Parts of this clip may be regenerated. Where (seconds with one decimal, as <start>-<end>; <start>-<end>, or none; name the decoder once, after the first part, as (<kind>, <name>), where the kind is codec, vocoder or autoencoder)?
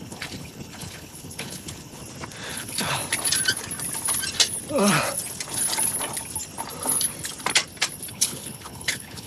0.0-2.0 (codec, HILCodec); 2.5-3.0; 8.1-9.3